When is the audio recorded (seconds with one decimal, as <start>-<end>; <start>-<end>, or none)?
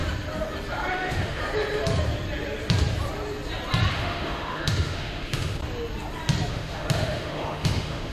0.0-0.9; 1.4-3.9; 5.6-6.5